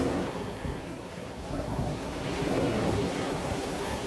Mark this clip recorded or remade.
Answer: remade